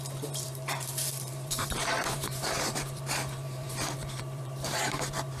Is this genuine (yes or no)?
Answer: no